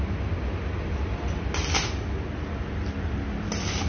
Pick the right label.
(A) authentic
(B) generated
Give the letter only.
A